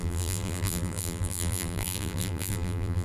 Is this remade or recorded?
remade